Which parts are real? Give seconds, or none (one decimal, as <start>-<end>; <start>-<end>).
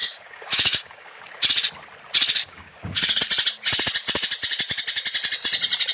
1.2-2.4; 3.2-5.9